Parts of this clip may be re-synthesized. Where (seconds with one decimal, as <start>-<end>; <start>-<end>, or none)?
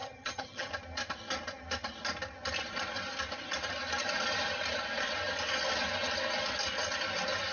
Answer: 0.0-0.7